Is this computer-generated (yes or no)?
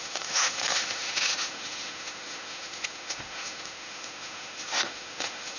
yes